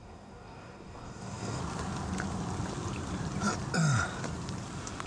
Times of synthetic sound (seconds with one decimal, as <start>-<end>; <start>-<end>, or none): 0.0-1.6